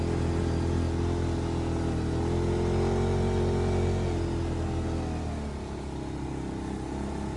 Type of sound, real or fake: real